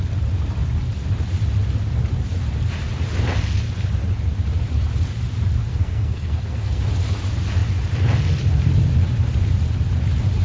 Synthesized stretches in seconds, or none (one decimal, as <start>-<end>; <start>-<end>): 5.7-6.8